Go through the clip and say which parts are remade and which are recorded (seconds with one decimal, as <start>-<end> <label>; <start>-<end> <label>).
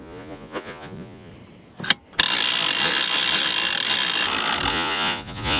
0.0-1.3 remade; 1.3-4.7 recorded; 4.7-5.6 remade